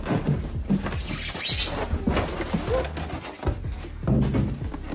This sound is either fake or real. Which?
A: real